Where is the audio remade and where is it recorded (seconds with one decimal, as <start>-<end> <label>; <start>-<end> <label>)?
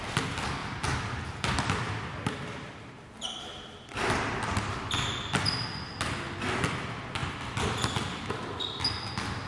0.0-0.6 recorded; 0.6-4.7 remade; 4.7-7.2 recorded; 7.2-8.3 remade; 8.3-9.5 recorded